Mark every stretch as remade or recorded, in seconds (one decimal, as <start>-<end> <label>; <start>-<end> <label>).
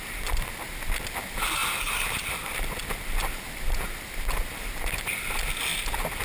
0.0-6.2 recorded